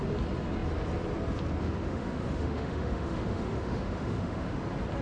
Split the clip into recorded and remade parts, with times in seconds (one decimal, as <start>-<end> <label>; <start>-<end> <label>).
0.0-1.6 recorded; 1.6-4.6 remade; 4.6-5.0 recorded